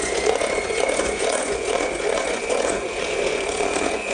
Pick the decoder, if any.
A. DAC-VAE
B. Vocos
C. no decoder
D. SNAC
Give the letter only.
B